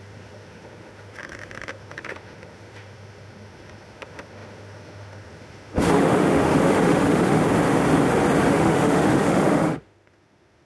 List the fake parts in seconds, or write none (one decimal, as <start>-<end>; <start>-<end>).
0.0-7.4; 8.5-10.7